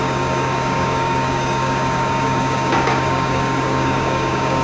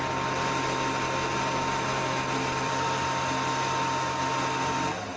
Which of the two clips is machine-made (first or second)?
first